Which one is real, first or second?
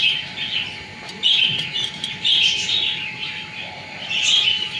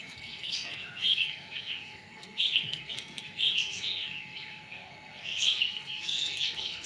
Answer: first